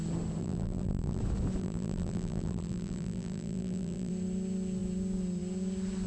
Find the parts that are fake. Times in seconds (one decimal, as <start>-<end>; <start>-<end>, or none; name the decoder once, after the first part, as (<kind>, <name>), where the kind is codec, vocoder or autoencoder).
0.4-1.2 (vocoder, BigVGAN v2); 1.6-4.1